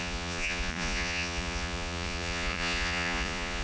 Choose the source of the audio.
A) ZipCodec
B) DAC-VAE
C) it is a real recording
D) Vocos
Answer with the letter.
D